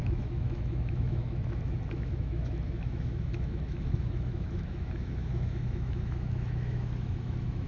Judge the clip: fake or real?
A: fake